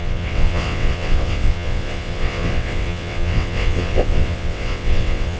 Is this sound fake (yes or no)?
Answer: yes